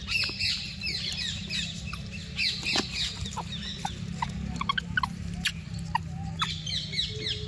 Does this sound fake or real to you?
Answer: real